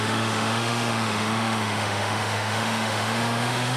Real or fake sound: fake